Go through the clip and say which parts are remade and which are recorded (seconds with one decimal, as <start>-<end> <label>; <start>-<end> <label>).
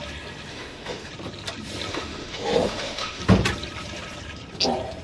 0.0-0.5 recorded; 0.5-1.1 remade; 1.1-1.9 recorded; 1.9-3.2 remade; 3.2-5.0 recorded